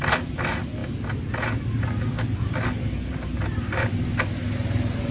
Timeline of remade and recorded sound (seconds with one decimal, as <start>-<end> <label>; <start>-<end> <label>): 0.0-5.1 recorded